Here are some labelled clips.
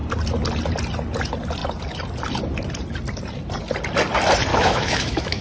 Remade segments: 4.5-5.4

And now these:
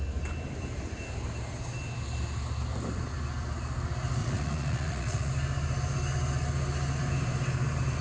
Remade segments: 4.2-5.3

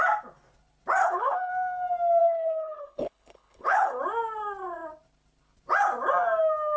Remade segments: 1.0-1.5; 2.2-4.0

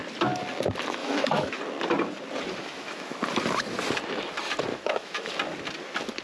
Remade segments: 1.0-1.6; 2.6-3.2; 4.7-5.3

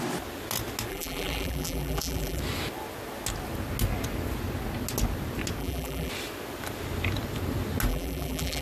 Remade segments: 0.9-2.4; 5.6-6.1; 7.9-8.6

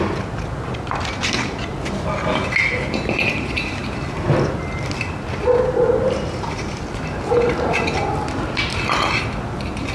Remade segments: none